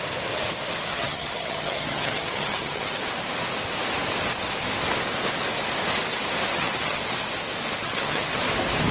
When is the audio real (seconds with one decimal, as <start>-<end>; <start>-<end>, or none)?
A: 0.0-0.9; 3.0-6.5; 7.0-7.8; 8.4-8.9